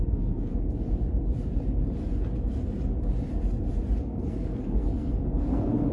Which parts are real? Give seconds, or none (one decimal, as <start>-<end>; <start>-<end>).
0.5-4.0